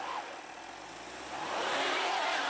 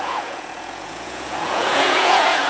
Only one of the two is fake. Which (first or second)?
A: second